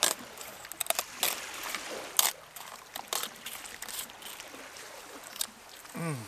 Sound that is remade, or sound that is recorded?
recorded